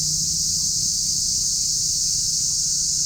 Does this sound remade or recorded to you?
recorded